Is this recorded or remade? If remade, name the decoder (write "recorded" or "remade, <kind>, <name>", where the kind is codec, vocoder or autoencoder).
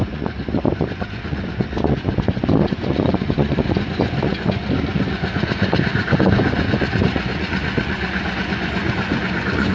remade, vocoder, Vocos